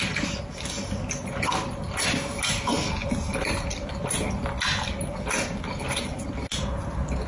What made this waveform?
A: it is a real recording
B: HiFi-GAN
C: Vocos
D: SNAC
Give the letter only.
A